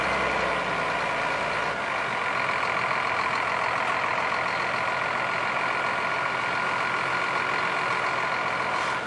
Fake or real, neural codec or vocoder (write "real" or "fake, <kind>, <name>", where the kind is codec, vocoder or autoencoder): real